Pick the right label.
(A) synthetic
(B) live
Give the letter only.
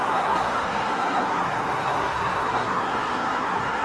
A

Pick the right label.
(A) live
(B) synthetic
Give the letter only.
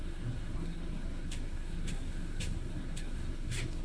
B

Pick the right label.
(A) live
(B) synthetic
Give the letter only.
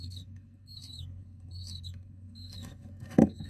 B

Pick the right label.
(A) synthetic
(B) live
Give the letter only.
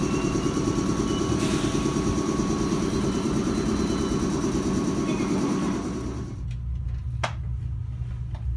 B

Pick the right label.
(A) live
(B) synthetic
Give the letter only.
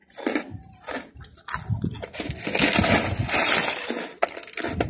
A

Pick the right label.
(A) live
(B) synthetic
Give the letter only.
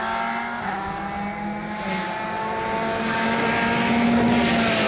A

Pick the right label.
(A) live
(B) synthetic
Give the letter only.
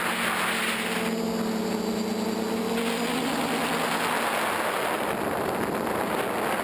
A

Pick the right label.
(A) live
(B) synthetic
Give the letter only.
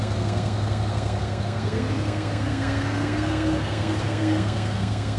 B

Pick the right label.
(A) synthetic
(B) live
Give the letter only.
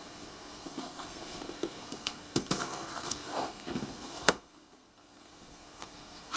A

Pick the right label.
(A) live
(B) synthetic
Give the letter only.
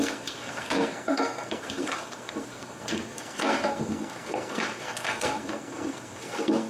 B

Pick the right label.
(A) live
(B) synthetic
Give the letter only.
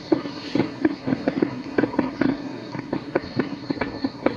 B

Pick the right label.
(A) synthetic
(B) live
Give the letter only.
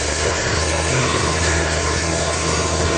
A